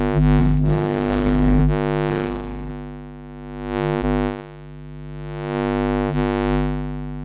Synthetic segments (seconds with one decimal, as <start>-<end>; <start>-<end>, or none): 0.4-1.6; 2.1-2.7